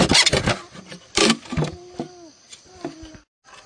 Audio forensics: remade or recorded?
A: recorded